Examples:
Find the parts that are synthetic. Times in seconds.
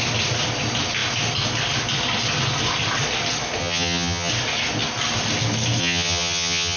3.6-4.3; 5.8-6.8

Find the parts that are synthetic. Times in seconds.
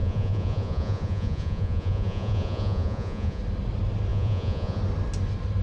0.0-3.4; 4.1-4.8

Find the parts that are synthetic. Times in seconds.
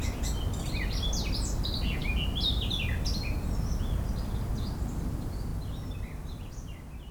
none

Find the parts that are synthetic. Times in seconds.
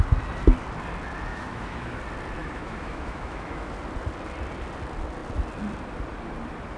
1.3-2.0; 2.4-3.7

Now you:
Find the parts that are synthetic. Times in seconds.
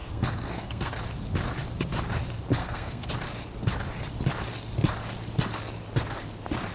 0.0-0.9; 2.6-3.1